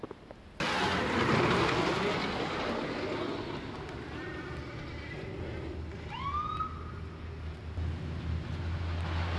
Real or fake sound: real